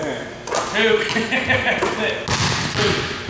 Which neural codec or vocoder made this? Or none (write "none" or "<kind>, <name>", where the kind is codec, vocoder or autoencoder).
none